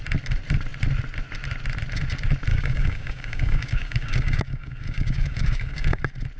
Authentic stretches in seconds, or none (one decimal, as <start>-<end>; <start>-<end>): 0.0-2.5; 6.0-6.4